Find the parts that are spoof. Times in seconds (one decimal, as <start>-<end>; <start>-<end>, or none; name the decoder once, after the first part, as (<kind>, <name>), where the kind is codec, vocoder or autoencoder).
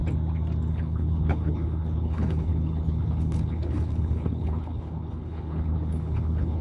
0.7-6.6 (codec, HILCodec)